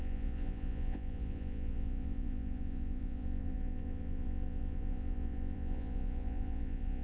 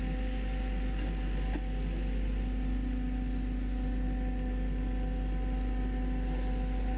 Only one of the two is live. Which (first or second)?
second